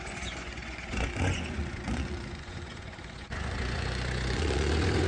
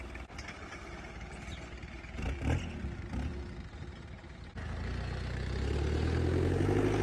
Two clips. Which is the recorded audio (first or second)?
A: second